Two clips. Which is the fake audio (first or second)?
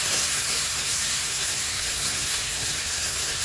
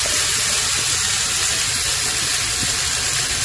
first